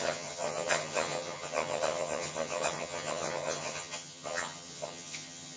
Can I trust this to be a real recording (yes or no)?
no